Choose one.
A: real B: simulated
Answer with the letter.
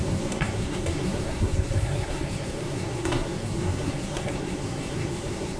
B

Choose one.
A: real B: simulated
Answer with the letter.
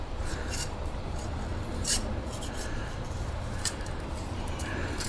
B